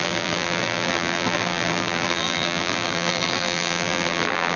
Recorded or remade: remade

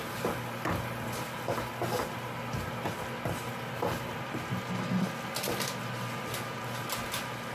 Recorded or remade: recorded